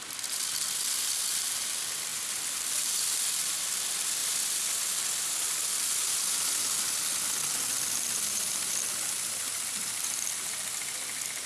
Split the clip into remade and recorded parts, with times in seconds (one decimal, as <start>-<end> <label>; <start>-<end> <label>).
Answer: 0.0-2.1 recorded; 2.1-3.2 remade; 3.2-4.2 recorded; 4.2-6.6 remade; 6.6-11.5 recorded